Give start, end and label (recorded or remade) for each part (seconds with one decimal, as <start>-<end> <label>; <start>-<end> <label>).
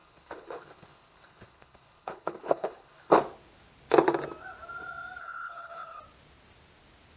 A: 0.0-3.1 remade; 3.1-5.2 recorded; 5.2-6.0 remade; 6.0-7.2 recorded